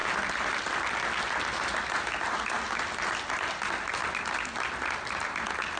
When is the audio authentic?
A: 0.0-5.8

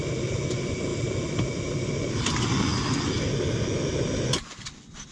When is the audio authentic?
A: 0.0-5.1

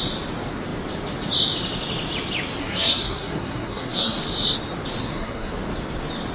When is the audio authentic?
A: 0.0-2.6; 4.2-5.0; 5.6-6.3